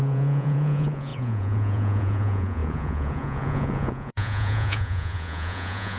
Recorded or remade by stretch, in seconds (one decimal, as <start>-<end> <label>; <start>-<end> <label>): 0.0-6.0 remade